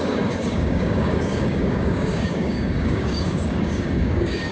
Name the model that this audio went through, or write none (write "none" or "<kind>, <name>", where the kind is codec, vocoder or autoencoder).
codec, DAC